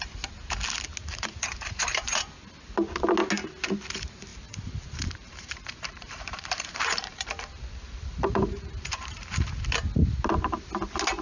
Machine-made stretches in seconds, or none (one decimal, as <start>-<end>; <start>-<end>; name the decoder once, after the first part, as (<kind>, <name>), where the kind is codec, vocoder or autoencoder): 1.0-2.3 (vocoder, BigVGAN v2); 4.3-9.5